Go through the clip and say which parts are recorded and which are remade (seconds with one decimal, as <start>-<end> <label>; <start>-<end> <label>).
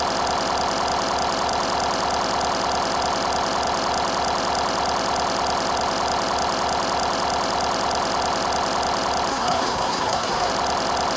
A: 0.0-9.3 recorded; 9.3-10.5 remade; 10.5-11.2 recorded